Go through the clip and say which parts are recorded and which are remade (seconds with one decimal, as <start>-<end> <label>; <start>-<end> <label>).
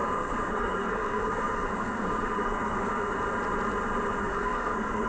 0.0-3.1 remade; 3.1-4.2 recorded; 4.2-5.1 remade